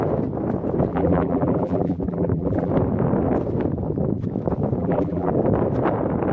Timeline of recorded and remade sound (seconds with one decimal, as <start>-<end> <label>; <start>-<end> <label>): 0.0-0.9 recorded; 0.9-2.7 remade; 2.7-4.8 recorded; 4.8-5.3 remade; 5.3-6.3 recorded